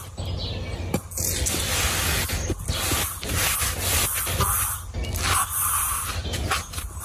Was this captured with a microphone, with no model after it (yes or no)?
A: yes